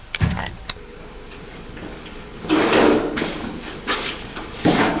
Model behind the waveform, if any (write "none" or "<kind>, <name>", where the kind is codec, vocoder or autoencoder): codec, DAC